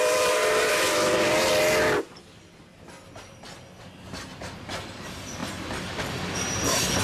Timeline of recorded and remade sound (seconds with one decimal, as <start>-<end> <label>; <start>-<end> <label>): 0.0-0.4 recorded; 0.4-1.5 remade; 1.5-5.4 recorded; 5.4-7.0 remade